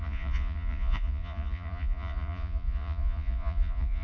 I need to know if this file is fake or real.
fake